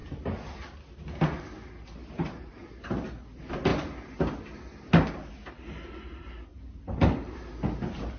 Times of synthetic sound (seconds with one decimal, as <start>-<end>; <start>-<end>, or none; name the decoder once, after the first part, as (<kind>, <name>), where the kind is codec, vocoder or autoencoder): 2.0-2.5 (vocoder, BigVGAN v2); 6.5-7.4